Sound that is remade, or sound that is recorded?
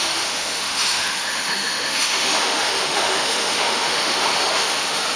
remade